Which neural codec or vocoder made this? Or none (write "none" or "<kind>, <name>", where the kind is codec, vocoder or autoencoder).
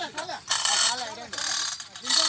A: none